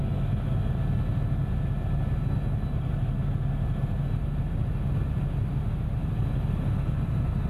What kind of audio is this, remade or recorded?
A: recorded